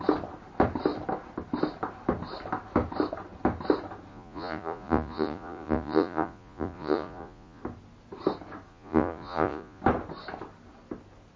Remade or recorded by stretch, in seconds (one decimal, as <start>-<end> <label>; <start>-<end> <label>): 0.0-4.1 recorded; 4.1-7.6 remade; 7.6-8.7 recorded; 8.7-9.8 remade; 9.8-11.4 recorded